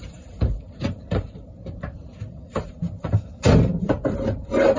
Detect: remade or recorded remade